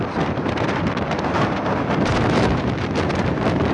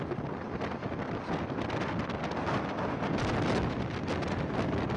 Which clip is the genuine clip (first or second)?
second